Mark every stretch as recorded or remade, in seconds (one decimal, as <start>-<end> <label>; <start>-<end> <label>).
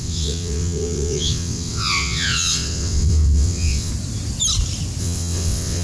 0.0-3.9 remade; 3.9-5.0 recorded; 5.0-5.8 remade